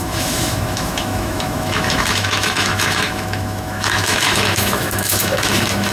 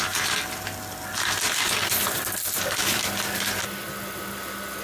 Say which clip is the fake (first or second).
first